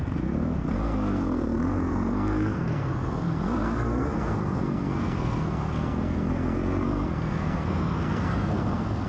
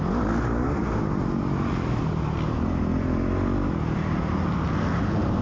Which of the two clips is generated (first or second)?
first